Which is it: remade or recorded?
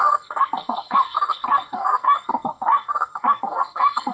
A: remade